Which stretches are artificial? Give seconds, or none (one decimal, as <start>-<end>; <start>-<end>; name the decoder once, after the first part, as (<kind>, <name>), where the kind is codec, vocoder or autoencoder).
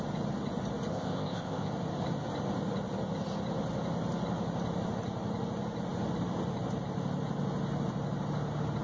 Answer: 0.9-1.7 (codec, ZipCodec)